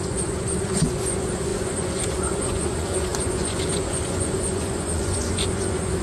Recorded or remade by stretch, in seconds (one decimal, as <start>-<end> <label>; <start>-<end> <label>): 0.0-6.0 remade